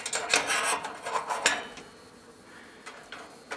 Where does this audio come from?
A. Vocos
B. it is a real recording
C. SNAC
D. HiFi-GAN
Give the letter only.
B